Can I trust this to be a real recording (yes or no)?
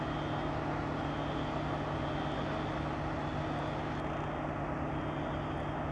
yes